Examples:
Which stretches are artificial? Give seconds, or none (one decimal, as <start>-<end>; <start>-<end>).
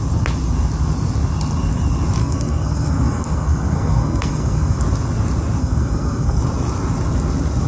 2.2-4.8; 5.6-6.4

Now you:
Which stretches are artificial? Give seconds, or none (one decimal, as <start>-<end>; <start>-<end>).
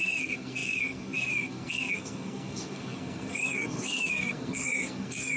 0.0-5.4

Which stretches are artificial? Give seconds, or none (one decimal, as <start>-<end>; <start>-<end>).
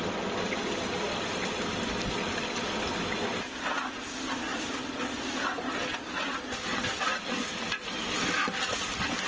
none